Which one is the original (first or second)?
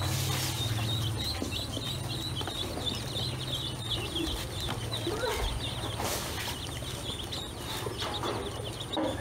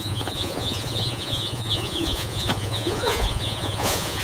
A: first